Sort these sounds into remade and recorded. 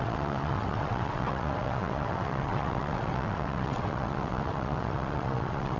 remade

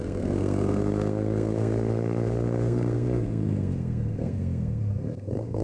remade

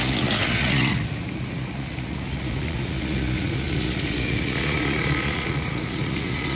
remade